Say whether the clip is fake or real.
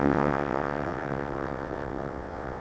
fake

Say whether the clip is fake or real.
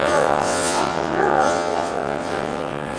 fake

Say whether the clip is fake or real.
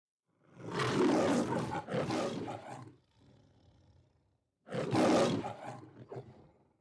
real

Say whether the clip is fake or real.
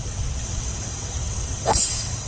fake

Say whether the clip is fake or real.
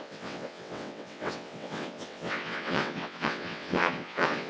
fake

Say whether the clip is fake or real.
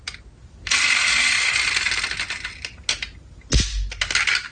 real